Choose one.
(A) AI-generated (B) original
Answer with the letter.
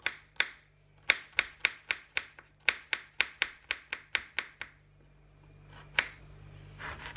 B